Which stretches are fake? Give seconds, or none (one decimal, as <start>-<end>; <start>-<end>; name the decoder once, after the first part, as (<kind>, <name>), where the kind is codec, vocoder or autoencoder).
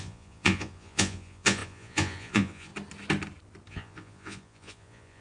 0.0-2.7 (vocoder, Vocos); 3.7-5.2